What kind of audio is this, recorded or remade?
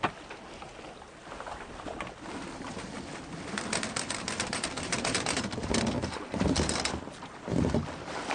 recorded